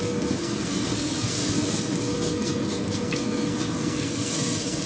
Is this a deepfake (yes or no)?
yes